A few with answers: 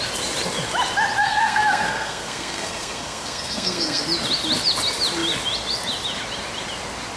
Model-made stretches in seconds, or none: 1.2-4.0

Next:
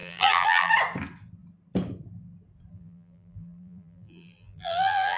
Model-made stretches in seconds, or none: 0.0-0.7; 2.7-5.2

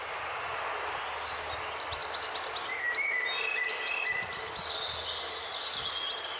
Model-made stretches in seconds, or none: none